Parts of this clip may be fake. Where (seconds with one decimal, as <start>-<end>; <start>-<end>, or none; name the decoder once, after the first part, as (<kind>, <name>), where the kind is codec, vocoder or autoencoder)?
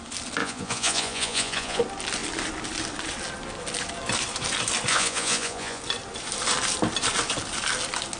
0.4-1.8 (vocoder, Vocos); 4.9-5.8